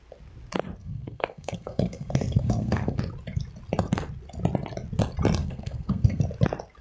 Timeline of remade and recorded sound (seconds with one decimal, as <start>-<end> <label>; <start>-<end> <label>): 0.0-0.8 recorded; 0.8-3.0 remade; 3.0-5.4 recorded; 5.4-6.2 remade; 6.2-6.8 recorded